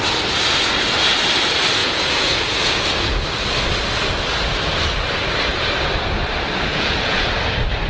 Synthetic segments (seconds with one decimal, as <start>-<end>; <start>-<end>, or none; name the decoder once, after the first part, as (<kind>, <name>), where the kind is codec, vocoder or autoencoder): 1.8-2.9 (vocoder, Vocos); 6.7-7.3